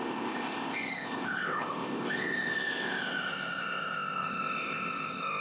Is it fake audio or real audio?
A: fake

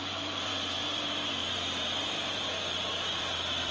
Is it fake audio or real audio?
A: fake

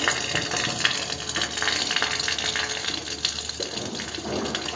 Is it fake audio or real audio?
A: real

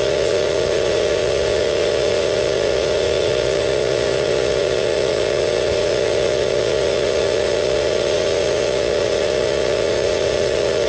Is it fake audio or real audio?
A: fake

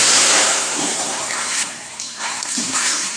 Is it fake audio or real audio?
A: fake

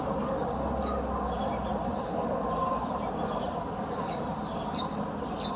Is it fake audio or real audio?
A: real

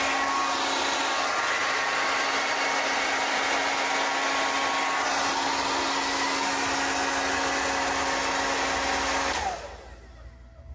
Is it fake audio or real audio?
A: real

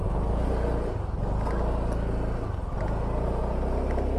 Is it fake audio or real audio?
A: real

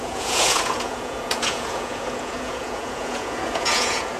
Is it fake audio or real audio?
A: fake